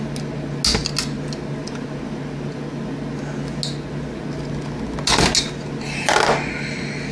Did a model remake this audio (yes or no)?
no